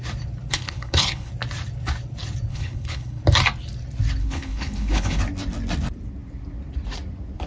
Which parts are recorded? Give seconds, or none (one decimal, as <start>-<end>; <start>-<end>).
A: 0.0-0.5; 1.3-2.5; 3.2-4.2; 5.2-7.5